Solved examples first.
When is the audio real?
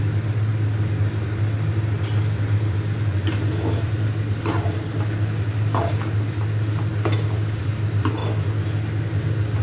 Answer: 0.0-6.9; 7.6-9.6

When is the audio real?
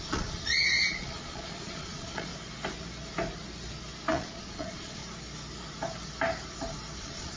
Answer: 2.3-4.1; 5.0-7.0